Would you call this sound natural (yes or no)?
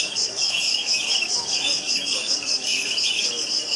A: no